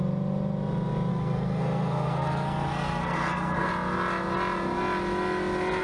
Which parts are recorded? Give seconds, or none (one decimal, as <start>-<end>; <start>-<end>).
0.0-1.1; 3.7-5.8